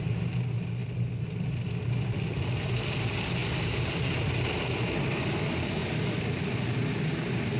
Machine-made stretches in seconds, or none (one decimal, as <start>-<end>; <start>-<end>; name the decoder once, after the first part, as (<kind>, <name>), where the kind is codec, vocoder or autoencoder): 0.8-2.4 (vocoder, BigVGAN v2); 3.4-4.0; 5.8-7.6